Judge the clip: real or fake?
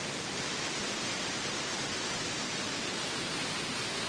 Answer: real